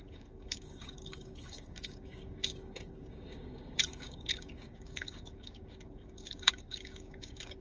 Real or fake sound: fake